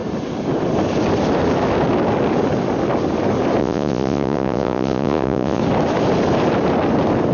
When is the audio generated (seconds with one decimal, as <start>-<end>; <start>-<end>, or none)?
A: 3.6-5.6